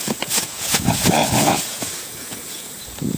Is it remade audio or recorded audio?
remade